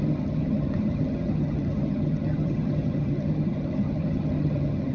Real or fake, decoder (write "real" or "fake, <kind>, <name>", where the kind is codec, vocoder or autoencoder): fake, vocoder, HiFi-GAN